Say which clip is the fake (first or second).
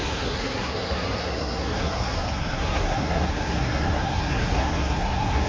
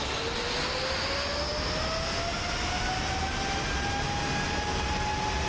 first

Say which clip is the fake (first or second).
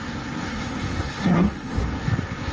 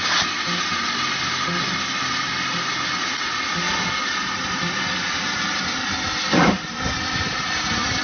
first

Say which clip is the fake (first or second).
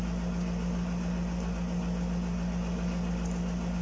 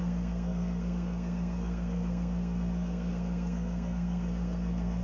second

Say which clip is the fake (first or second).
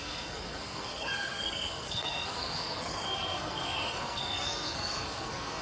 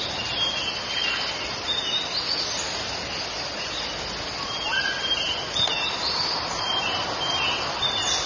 first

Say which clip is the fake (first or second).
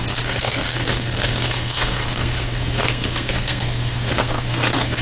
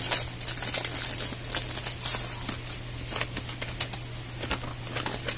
first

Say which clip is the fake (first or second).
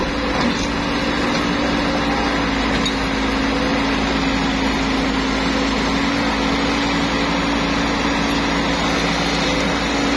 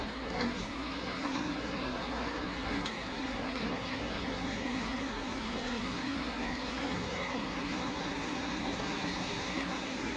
second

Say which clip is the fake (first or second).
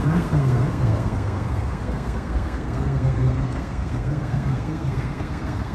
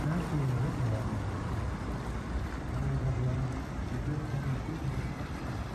first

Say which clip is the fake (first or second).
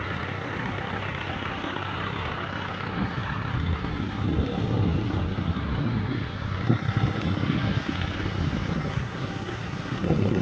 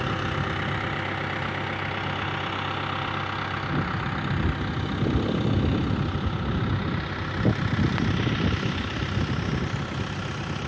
first